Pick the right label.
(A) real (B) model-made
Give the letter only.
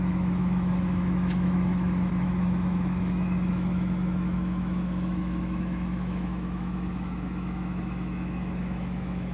B